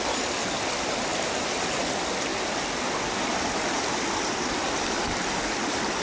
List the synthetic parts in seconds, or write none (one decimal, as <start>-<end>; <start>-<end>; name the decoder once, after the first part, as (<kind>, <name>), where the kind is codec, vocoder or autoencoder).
none